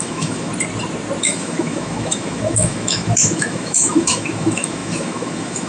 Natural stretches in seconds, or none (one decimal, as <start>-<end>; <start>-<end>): 0.5-1.2